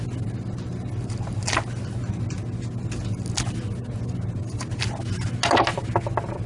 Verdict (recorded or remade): recorded